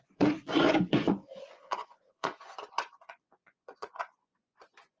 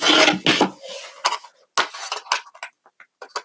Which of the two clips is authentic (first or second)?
second